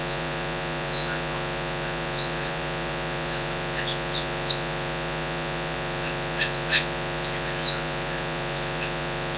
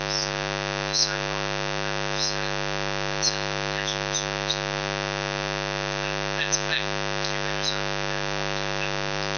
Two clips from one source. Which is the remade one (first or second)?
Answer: first